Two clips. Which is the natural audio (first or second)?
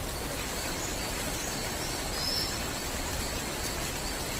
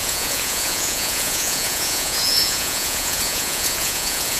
first